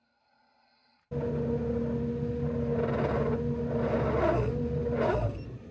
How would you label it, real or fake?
real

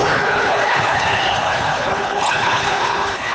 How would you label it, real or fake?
fake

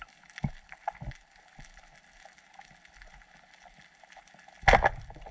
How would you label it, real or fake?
real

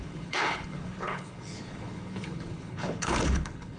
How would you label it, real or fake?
fake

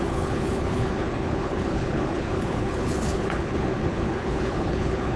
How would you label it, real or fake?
fake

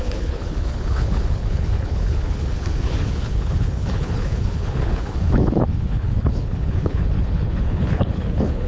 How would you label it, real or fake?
fake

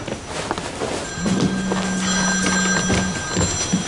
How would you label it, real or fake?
real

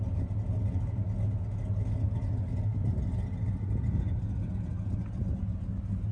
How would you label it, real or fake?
real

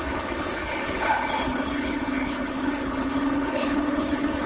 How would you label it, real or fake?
fake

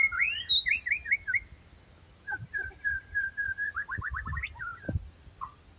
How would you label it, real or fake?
real